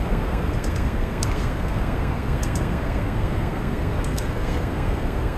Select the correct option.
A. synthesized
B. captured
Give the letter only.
A